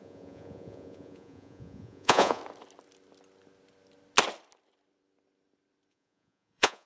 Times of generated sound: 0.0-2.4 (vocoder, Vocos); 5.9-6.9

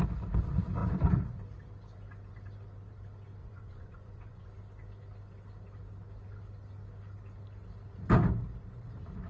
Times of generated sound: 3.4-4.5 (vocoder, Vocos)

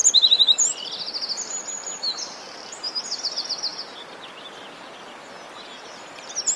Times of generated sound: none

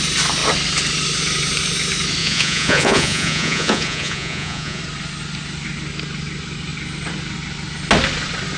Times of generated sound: 2.2-4.8 (vocoder, Vocos)